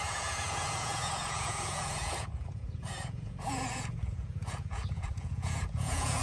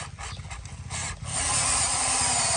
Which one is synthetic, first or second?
first